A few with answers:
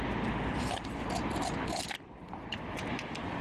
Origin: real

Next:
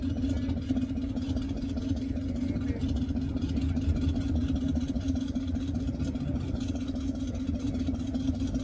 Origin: real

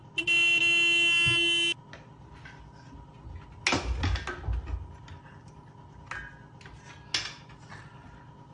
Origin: real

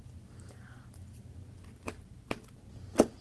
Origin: real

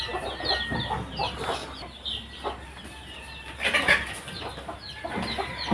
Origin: real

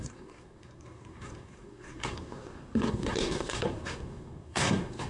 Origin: fake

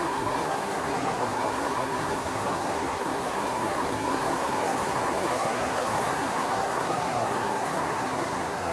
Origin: fake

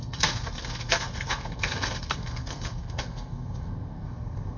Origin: fake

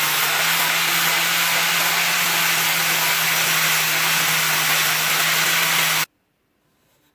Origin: real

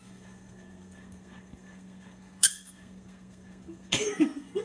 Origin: fake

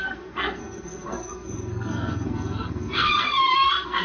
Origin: fake